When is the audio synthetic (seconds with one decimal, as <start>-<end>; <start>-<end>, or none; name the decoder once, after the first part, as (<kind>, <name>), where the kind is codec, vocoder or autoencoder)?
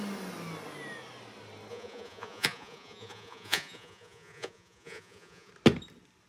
1.7-5.5 (vocoder, Vocos)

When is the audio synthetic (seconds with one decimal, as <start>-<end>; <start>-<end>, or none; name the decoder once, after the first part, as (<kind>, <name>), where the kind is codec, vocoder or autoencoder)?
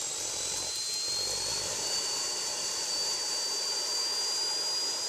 1.5-4.0 (vocoder, BigVGAN v2)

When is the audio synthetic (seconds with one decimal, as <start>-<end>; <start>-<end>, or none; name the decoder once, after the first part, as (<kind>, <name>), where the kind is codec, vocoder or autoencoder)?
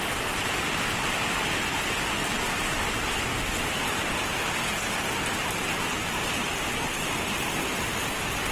2.2-2.9 (vocoder, BigVGAN v2)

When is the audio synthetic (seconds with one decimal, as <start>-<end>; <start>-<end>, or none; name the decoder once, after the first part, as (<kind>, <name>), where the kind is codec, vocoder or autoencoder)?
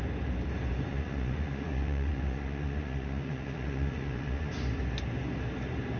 0.9-4.5 (vocoder, Vocos)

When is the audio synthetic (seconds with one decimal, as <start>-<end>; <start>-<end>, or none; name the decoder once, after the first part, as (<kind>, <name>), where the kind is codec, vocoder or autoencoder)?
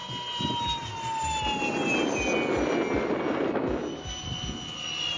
none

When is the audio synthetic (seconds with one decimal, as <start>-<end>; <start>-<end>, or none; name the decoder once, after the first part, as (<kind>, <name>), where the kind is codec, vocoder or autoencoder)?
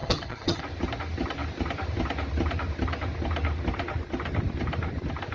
0.0-0.6 (vocoder, HiFi-GAN)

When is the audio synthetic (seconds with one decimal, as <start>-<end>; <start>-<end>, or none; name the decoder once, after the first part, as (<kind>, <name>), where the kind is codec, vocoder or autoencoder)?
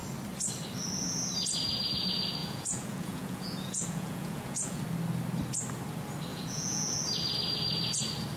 2.4-4.8 (vocoder, Vocos); 6.3-6.9